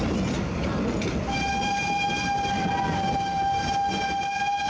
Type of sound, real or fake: real